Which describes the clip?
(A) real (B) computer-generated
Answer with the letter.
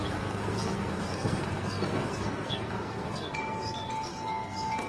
B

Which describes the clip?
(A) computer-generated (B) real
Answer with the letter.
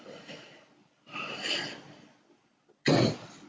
B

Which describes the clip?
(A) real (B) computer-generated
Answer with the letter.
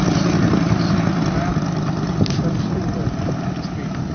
A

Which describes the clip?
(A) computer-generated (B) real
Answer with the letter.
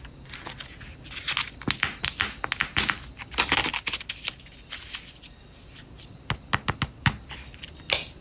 B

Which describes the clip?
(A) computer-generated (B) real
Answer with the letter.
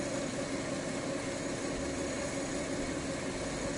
B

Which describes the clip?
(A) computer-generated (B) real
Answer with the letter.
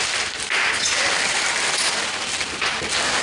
B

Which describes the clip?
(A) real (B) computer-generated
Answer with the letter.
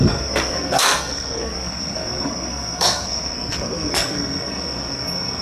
B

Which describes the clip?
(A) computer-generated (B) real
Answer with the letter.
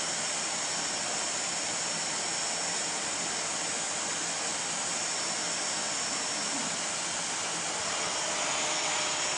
B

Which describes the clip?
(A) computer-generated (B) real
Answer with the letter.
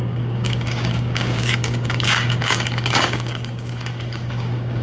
A